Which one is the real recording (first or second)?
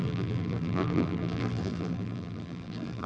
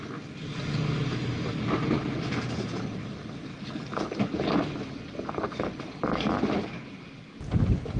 second